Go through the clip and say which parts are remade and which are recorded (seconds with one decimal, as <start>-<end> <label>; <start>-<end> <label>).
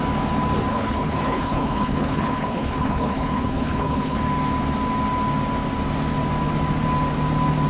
0.0-0.7 recorded; 0.7-4.2 remade; 4.2-7.7 recorded